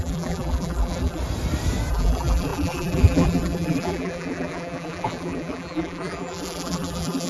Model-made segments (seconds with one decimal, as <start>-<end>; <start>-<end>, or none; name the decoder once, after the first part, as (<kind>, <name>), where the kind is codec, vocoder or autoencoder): 0.0-1.2 (vocoder, BigVGAN v2); 1.9-7.3